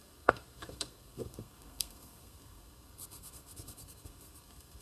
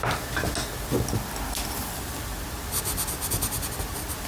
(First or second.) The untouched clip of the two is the second